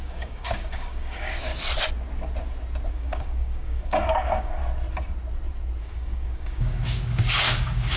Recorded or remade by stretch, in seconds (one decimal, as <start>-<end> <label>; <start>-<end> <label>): 0.0-1.5 remade; 1.5-2.9 recorded; 2.9-4.6 remade; 4.6-5.8 recorded; 5.8-8.0 remade